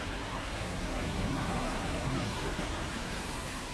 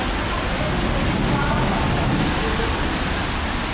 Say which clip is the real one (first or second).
second